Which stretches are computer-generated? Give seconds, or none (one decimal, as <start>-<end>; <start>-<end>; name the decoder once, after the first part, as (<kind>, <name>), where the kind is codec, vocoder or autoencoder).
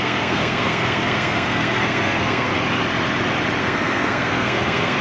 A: 0.0-2.5 (codec, SNAC); 3.6-5.0